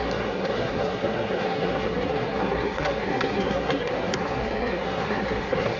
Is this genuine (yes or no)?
no